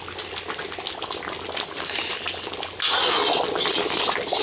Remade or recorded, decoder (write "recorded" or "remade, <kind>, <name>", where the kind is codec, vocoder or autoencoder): recorded